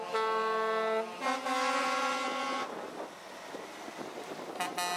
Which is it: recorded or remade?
recorded